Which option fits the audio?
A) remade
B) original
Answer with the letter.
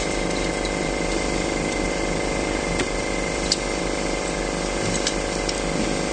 A